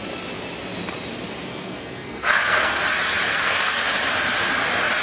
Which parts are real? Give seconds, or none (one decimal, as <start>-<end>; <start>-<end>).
0.0-1.5; 2.8-3.3; 3.8-5.0